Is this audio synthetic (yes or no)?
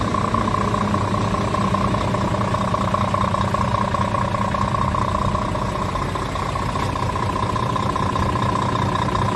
no